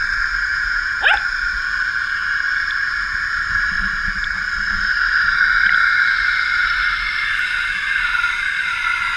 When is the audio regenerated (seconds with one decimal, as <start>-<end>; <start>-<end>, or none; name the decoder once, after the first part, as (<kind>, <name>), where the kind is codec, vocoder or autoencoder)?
0.5-1.0 (vocoder, Vocos)

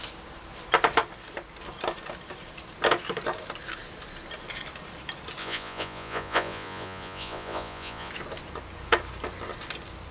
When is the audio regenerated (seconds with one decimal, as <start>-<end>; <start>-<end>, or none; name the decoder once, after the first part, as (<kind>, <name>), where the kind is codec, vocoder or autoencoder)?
5.4-8.1 (vocoder, Vocos)

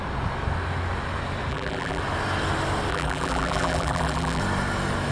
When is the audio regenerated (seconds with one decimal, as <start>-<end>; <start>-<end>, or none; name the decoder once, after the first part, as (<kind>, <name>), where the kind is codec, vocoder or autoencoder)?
1.5-2.0 (vocoder, BigVGAN v2); 2.9-4.4

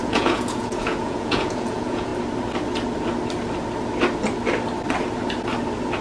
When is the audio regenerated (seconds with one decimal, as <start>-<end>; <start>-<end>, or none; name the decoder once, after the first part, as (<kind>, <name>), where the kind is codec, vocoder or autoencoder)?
0.0-2.1 (vocoder, Vocos)

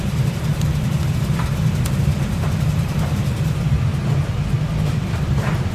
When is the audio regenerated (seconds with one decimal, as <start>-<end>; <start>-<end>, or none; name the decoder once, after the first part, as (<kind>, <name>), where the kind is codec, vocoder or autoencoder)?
0.0-0.5 (vocoder, BigVGAN v2); 1.2-3.9; 4.6-5.7

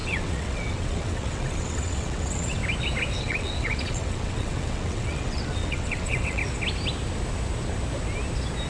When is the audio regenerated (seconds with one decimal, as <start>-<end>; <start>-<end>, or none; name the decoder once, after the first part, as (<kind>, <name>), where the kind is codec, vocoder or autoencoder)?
0.0-2.6 (vocoder, WaveNeXt); 3.2-6.4